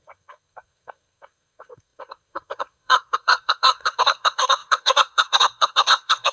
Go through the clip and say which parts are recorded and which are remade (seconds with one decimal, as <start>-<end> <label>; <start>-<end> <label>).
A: 0.0-6.3 remade